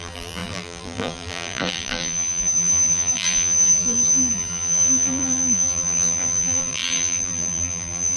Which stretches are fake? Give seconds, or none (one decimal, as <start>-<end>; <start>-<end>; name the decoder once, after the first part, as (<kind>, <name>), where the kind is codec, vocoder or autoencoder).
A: 0.0-8.2 (vocoder, BigVGAN v2)